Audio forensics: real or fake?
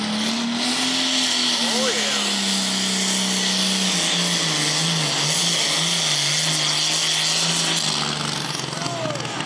real